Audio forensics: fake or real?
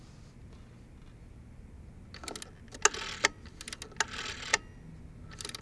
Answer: real